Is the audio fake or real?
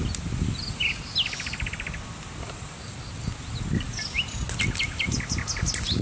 real